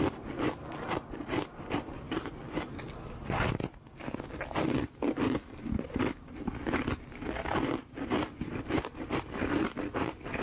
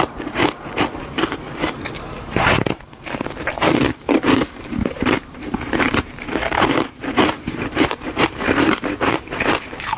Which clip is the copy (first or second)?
second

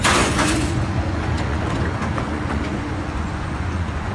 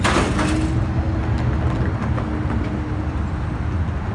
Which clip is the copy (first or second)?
first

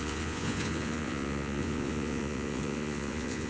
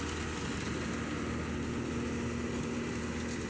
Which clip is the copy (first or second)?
first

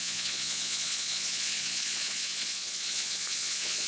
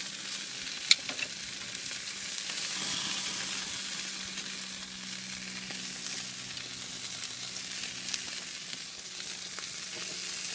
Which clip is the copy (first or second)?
first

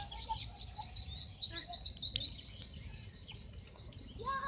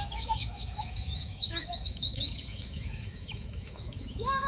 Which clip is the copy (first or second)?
second